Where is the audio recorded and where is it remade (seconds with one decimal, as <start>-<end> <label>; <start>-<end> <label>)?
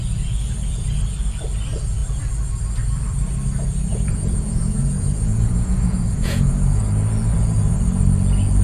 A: 0.0-3.9 recorded; 3.9-6.8 remade; 6.8-8.6 recorded